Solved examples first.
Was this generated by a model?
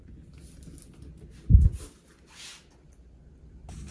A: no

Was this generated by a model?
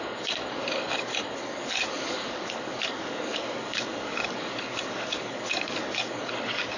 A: yes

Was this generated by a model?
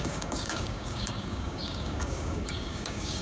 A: yes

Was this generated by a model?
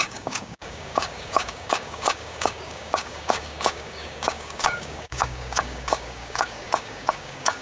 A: yes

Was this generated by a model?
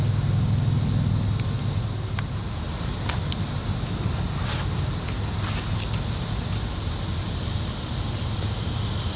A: no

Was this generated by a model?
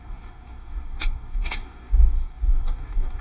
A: yes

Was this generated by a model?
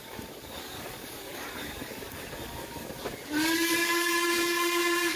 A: yes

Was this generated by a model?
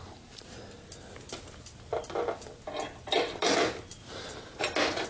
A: no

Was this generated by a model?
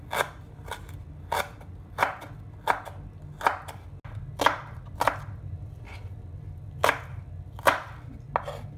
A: no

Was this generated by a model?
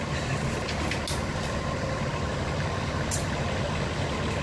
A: no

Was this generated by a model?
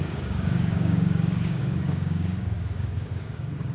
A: yes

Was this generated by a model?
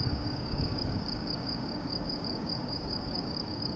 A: yes